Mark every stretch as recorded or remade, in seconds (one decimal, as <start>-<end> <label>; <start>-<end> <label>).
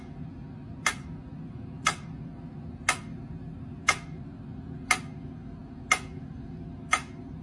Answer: 0.0-7.4 recorded